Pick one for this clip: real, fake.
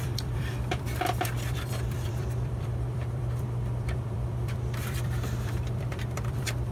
fake